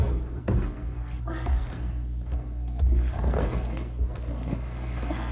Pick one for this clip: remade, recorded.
remade